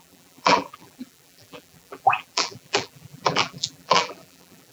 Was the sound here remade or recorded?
remade